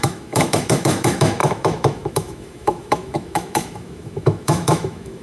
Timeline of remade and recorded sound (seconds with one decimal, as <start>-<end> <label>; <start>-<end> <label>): 0.0-5.2 remade

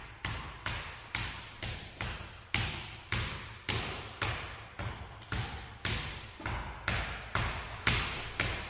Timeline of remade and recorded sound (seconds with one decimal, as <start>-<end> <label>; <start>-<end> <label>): 0.0-8.7 recorded

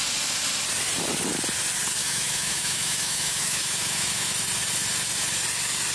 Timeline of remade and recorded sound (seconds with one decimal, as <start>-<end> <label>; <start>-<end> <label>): 0.0-2.0 recorded; 2.0-4.3 remade; 4.3-5.9 recorded

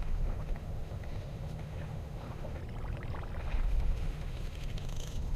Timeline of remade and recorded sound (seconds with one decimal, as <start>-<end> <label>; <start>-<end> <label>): 0.0-2.6 remade; 2.6-3.4 recorded; 3.4-5.4 remade

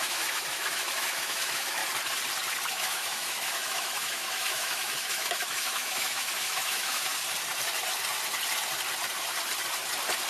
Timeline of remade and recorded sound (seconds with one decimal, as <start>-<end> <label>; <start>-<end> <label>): 0.0-1.8 remade; 1.8-2.7 recorded; 2.7-7.1 remade; 7.1-10.3 recorded

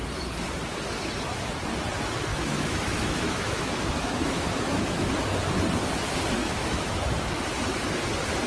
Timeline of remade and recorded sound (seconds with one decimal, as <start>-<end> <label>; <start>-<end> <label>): 0.0-2.3 recorded; 2.3-5.1 remade; 5.1-6.4 recorded; 6.4-7.3 remade; 7.3-8.5 recorded

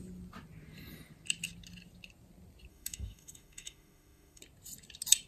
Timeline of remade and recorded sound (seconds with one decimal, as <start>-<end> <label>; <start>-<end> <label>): 0.0-2.7 recorded; 2.7-4.4 remade; 4.4-5.3 recorded

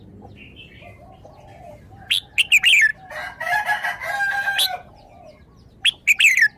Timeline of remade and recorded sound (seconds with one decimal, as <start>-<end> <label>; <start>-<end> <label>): 0.0-6.6 recorded